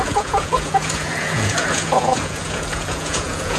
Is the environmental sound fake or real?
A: fake